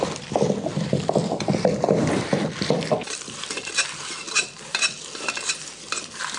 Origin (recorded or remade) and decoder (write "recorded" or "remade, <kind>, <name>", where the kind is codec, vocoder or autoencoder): remade, vocoder, BigVGAN v2